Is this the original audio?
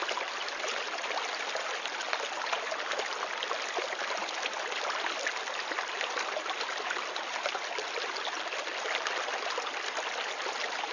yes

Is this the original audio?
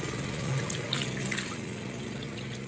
no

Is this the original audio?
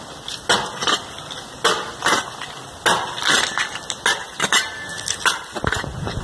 yes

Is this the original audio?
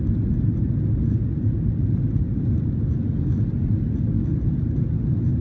yes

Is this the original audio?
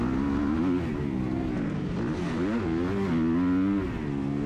yes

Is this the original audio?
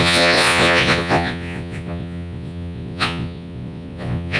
no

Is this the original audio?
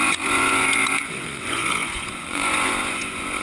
no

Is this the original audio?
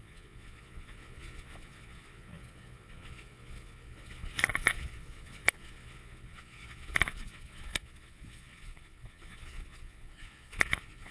no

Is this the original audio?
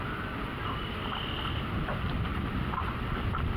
yes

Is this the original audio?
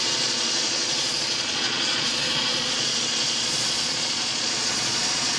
no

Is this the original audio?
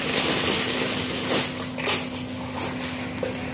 yes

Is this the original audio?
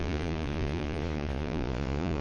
no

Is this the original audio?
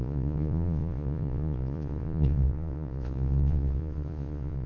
no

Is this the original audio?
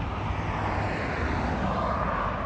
yes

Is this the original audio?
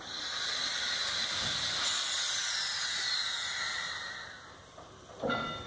yes